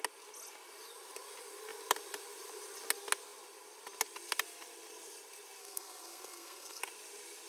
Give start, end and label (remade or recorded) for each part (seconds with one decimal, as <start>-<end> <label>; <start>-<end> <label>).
0.0-5.6 recorded; 5.6-6.8 remade; 6.8-7.5 recorded